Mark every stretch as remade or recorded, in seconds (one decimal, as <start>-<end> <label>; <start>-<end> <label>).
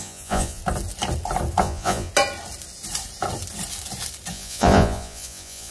0.0-0.6 remade; 0.6-1.6 recorded; 1.6-2.1 remade; 2.1-4.3 recorded; 4.3-5.7 remade